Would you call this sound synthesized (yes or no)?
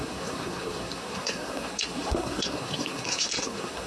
yes